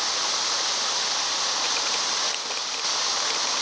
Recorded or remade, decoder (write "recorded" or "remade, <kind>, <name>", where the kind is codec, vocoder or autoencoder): recorded